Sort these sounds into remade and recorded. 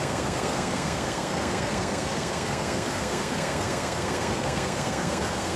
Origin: remade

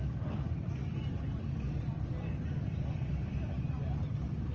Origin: recorded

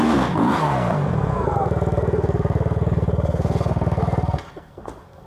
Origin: remade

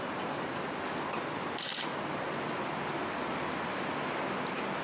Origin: recorded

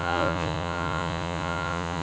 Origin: remade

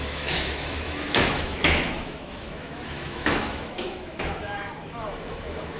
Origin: remade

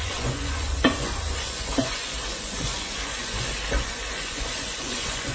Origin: remade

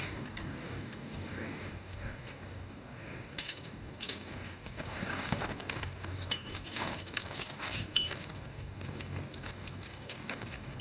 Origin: remade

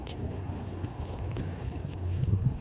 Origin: remade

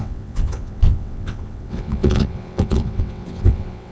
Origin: remade